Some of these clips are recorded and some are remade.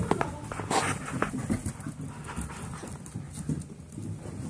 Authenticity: recorded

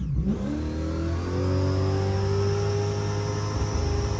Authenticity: recorded